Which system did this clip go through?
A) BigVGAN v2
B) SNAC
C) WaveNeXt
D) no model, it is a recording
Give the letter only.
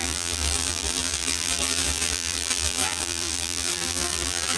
A